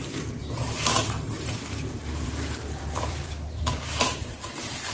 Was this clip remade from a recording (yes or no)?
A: yes